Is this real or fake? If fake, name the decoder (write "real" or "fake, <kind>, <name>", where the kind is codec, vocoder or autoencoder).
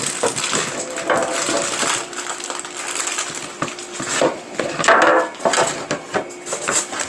real